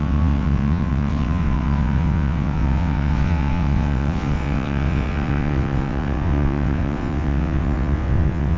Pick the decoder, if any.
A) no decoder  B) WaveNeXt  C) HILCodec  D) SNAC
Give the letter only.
B